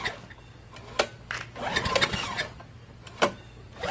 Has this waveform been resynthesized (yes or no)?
no